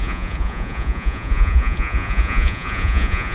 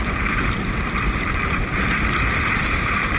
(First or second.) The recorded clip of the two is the second